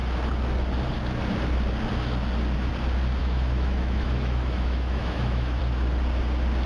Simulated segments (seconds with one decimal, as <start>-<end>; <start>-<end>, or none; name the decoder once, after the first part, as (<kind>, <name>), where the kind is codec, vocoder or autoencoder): 3.2-5.6 (autoencoder, DAC-VAE)